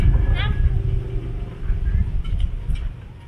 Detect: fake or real real